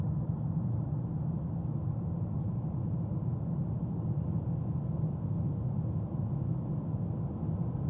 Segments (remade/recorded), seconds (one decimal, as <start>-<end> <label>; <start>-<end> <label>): 0.0-7.9 recorded